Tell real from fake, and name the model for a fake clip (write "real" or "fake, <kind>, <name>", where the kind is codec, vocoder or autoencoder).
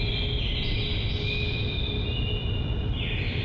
real